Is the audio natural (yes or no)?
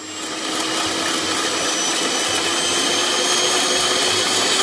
yes